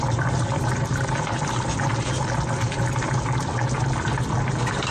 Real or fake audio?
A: real